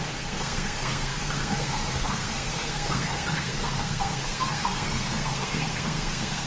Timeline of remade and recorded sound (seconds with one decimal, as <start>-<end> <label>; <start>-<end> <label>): 0.0-6.5 remade